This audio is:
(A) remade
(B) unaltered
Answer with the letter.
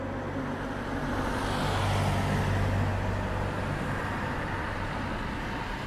B